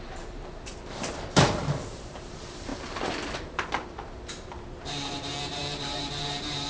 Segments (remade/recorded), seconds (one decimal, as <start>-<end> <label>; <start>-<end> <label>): 0.0-6.7 remade